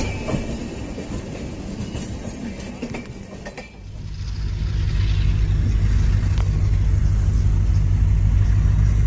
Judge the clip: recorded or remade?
recorded